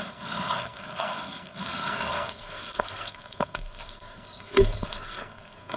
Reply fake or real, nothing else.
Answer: fake